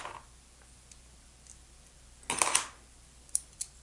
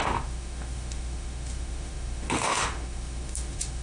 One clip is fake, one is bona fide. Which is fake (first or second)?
second